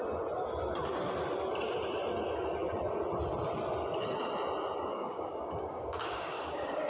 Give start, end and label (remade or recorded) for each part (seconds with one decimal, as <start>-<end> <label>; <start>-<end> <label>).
0.0-4.9 recorded; 4.9-6.9 remade